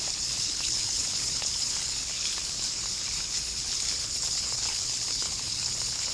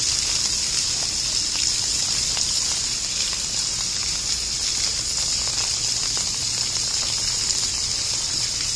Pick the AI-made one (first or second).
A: first